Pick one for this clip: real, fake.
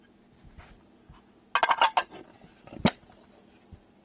real